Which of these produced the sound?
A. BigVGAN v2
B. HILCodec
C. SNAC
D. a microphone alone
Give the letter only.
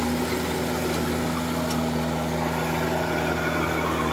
D